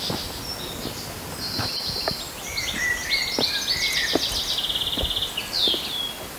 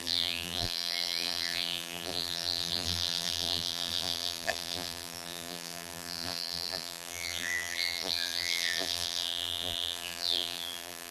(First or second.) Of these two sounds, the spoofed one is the second